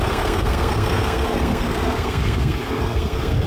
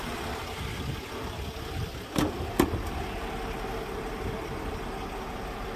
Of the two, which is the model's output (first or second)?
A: first